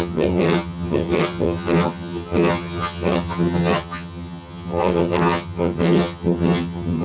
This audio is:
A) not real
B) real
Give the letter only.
A